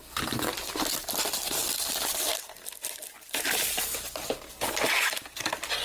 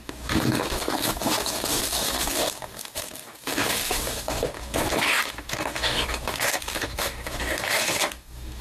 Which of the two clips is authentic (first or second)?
first